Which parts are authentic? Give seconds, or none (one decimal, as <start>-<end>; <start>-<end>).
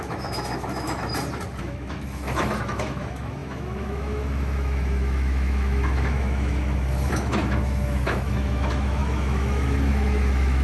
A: 1.0-1.6